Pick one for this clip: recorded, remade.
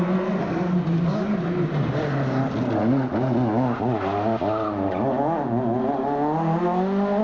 recorded